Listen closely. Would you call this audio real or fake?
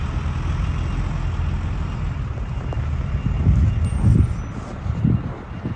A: real